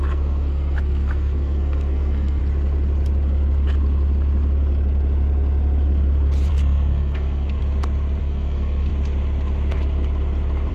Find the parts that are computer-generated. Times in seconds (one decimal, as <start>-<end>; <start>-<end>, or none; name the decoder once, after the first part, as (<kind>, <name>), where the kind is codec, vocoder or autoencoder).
0.0-2.4 (codec, SNAC); 6.5-7.6; 8.2-8.9